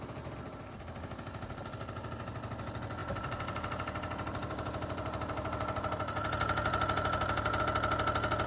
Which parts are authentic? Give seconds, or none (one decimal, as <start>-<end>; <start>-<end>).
0.0-3.0; 7.6-8.5

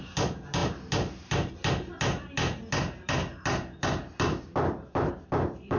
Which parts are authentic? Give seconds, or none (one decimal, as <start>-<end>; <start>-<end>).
0.0-5.8